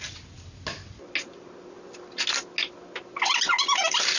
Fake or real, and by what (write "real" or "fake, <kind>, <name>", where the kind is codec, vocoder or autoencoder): real